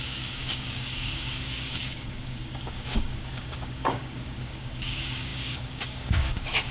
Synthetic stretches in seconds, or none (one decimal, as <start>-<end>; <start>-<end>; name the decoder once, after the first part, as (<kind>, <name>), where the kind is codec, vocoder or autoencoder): 0.0-6.7 (codec, DAC)